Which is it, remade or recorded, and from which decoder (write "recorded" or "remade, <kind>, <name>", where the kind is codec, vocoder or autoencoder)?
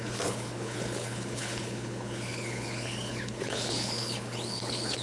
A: remade, codec, HILCodec